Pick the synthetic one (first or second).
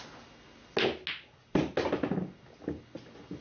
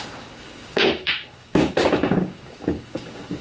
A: second